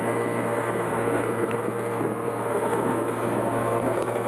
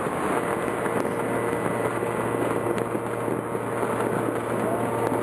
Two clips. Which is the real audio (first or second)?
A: second